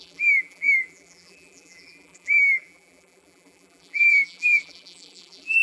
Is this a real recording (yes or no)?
no